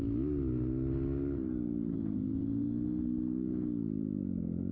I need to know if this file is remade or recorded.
recorded